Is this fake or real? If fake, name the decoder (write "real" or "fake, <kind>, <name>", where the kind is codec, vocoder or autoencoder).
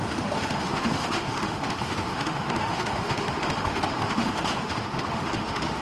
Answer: fake, autoencoder, DAC-VAE